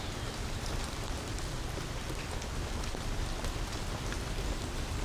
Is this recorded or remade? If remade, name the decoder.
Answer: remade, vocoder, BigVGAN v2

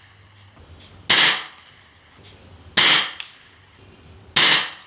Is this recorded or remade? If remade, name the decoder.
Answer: recorded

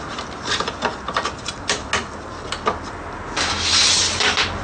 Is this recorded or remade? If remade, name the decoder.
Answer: recorded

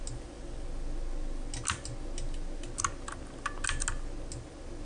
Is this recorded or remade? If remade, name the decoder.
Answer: recorded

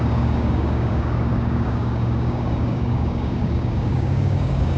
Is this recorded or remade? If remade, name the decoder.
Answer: remade, codec, DAC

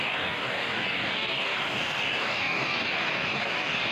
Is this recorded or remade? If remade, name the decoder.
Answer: remade, codec, DAC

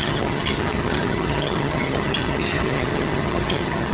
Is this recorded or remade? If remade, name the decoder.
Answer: remade, vocoder, HiFi-GAN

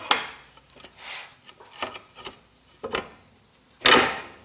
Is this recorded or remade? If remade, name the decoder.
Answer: recorded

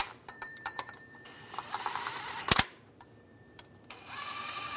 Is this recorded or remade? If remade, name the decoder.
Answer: remade, vocoder, BigVGAN v2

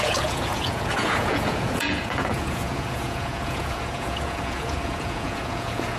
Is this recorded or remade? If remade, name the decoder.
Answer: remade, vocoder, Vocos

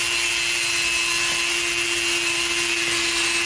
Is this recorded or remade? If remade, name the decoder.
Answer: recorded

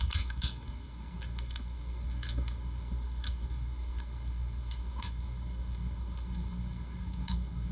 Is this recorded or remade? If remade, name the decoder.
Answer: remade, codec, SNAC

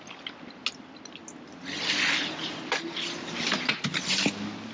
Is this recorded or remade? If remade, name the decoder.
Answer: recorded